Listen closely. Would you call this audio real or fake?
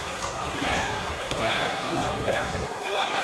fake